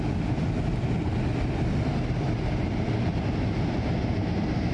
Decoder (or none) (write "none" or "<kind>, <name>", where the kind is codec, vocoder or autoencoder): none